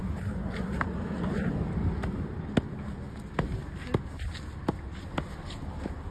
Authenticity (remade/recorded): recorded